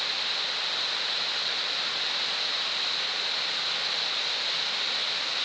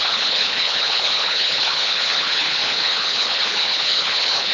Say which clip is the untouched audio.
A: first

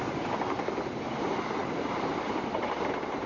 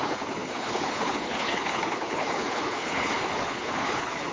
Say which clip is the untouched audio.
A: first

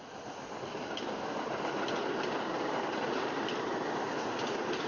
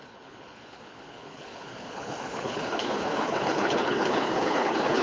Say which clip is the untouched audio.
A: first